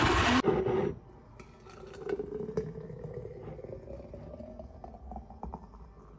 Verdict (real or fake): real